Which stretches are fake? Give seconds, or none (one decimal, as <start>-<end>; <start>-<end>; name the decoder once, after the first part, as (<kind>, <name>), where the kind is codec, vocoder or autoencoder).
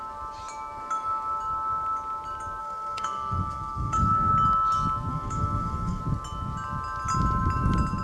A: 2.6-4.3 (codec, SNAC); 5.1-6.0